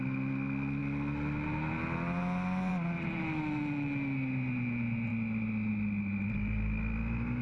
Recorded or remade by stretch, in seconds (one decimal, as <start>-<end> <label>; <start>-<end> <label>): 0.0-7.4 recorded